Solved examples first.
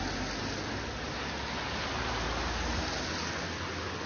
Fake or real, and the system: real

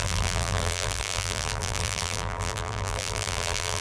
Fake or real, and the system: fake, vocoder, BigVGAN v2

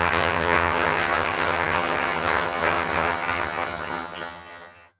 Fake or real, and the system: fake, vocoder, HiFi-GAN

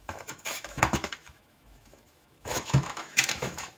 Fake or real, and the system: fake, autoencoder, DAC-VAE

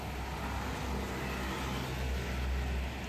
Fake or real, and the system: real